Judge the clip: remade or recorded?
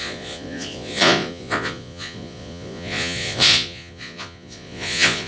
remade